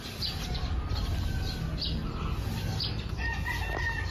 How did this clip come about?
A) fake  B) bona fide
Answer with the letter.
B